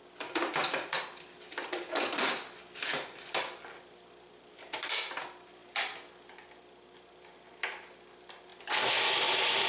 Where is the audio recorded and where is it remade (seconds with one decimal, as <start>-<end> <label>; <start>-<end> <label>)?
0.0-9.7 recorded